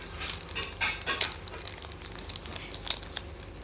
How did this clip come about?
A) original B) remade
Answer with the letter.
A